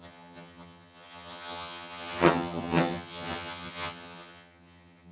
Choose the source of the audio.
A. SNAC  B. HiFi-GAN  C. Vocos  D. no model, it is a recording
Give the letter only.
B